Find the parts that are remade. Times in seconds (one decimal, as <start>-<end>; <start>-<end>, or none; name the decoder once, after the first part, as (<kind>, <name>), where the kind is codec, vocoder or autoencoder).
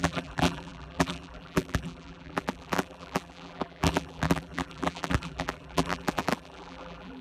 0.0-7.2 (vocoder, BigVGAN v2)